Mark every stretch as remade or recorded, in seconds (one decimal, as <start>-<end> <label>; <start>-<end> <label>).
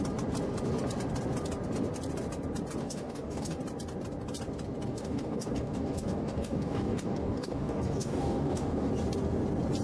0.0-2.8 recorded; 2.8-3.6 remade; 3.6-4.9 recorded; 4.9-8.9 remade; 8.9-9.8 recorded